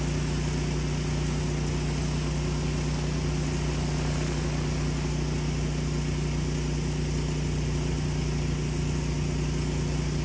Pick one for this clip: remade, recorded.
recorded